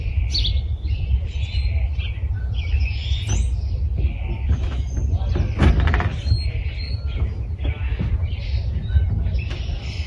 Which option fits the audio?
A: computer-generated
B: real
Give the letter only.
B